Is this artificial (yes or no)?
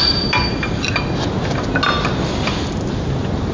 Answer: no